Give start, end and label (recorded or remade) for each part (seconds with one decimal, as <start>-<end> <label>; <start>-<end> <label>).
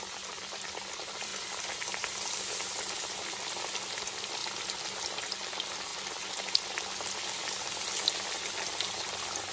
0.0-1.3 remade; 1.3-3.9 recorded; 3.9-4.4 remade; 4.4-5.2 recorded; 5.2-5.9 remade; 5.9-8.5 recorded; 8.5-9.5 remade